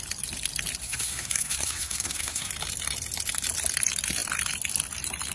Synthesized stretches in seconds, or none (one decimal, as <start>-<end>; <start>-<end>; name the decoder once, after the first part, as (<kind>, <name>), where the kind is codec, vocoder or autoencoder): 0.8-2.5 (codec, SNAC)